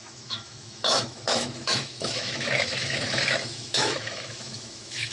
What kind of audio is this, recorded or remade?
remade